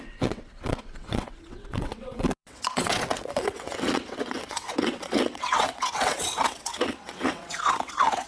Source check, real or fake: fake